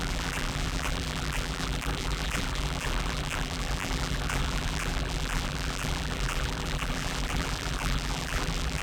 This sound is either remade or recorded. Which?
remade